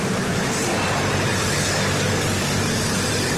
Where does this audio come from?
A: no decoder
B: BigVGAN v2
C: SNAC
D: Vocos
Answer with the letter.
B